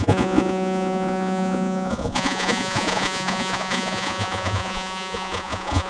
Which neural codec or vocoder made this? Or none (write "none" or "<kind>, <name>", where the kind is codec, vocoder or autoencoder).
vocoder, Vocos